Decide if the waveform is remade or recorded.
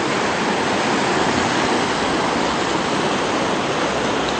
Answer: recorded